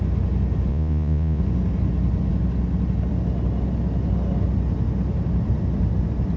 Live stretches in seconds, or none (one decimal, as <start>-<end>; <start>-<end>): 0.0-0.7; 1.4-6.4